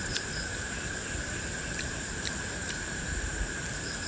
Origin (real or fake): fake